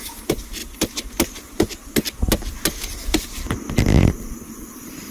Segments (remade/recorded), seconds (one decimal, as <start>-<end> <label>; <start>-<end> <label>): 0.0-5.1 recorded